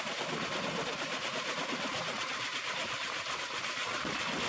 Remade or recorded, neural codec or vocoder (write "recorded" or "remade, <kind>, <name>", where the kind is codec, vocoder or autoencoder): recorded